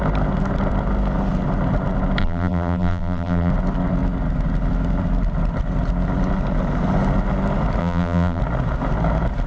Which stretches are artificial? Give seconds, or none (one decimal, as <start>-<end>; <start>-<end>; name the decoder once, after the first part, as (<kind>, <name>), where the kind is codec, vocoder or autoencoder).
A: 2.2-3.5 (vocoder, BigVGAN v2); 7.8-8.4